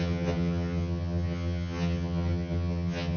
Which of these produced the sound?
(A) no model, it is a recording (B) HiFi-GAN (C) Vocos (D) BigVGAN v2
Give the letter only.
B